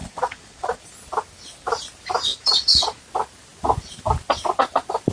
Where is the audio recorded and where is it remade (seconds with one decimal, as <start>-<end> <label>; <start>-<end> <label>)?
0.0-0.8 remade; 0.8-2.3 recorded; 2.3-3.0 remade; 3.0-5.1 recorded